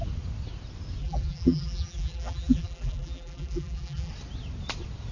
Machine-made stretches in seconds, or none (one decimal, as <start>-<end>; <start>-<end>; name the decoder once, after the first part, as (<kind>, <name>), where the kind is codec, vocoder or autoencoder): 1.0-4.1 (vocoder, BigVGAN v2)